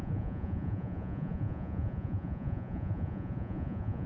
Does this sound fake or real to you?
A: fake